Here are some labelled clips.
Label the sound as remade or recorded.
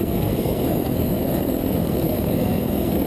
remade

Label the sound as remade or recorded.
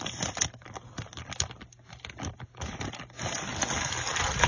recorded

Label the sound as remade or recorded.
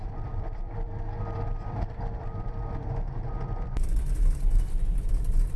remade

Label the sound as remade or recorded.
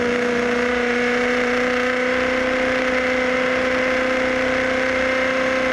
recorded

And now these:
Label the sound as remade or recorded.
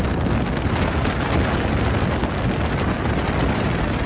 recorded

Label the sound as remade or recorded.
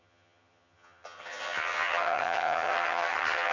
remade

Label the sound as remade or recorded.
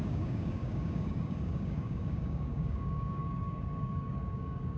remade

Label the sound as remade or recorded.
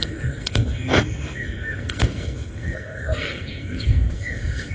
remade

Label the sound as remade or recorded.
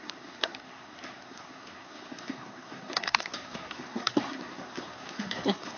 remade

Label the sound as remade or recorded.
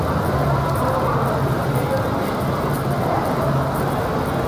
recorded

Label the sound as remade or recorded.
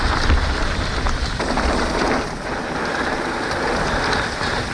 recorded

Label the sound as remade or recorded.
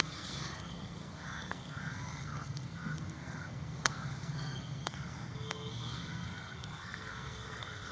remade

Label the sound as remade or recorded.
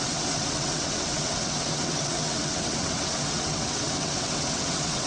remade